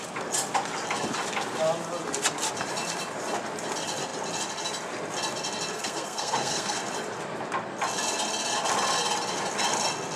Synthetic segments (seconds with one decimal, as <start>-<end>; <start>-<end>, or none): 5.7-6.8